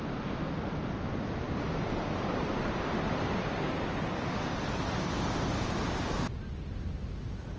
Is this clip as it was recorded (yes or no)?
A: yes